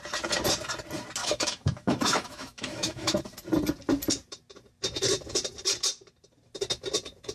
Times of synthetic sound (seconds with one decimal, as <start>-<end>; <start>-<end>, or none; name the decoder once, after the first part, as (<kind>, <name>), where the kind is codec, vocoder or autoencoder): 1.2-3.2 (autoencoder, DAC-VAE)